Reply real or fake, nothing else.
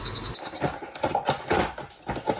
real